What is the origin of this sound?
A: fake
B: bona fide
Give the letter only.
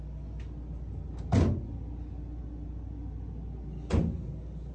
B